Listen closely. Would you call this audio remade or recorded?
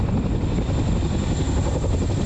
recorded